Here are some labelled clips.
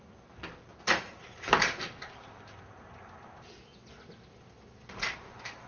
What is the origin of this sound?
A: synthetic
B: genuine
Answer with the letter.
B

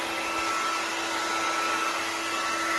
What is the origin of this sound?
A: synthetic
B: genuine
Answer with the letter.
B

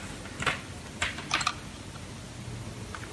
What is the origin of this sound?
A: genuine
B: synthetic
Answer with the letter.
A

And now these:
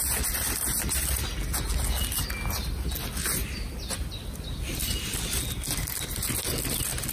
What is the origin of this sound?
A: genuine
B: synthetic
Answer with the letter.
A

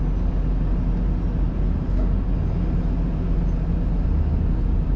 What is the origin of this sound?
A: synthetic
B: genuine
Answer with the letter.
B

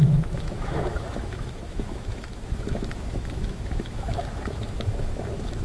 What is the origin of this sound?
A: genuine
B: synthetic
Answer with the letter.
B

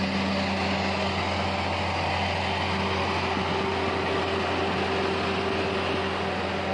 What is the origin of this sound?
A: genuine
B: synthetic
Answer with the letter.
A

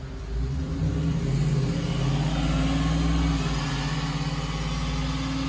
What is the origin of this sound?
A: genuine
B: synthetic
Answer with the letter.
A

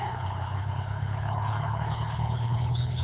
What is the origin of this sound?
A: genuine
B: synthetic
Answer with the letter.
B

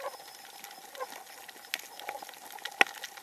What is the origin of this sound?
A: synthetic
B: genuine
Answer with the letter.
B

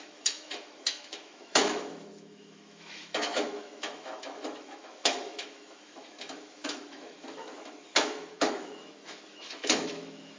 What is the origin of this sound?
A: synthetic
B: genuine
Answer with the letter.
A